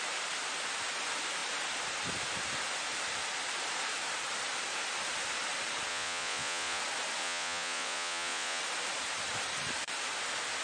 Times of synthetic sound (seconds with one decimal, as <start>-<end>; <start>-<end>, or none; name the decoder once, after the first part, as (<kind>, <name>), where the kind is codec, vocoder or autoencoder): 5.9-6.8 (vocoder, Vocos); 7.2-8.6